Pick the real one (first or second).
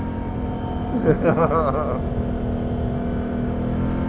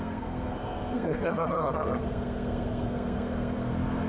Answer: first